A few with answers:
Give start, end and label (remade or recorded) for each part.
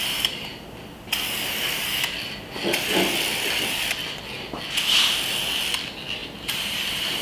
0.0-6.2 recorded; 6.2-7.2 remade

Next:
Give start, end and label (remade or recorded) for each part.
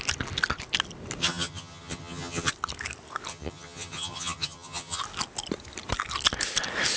0.0-1.2 recorded; 1.2-2.5 remade; 2.5-3.3 recorded; 3.3-5.0 remade; 5.0-7.0 recorded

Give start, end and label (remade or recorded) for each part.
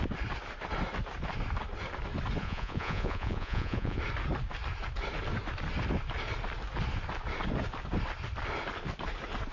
0.0-2.4 recorded; 2.4-4.0 remade; 4.0-9.5 recorded